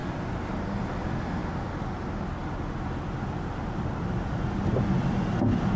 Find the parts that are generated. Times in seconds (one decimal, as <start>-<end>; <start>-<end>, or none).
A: none